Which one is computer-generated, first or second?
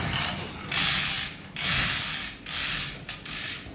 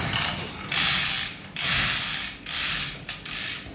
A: second